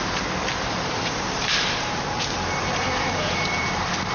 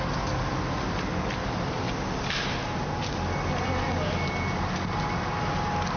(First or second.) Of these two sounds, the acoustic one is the second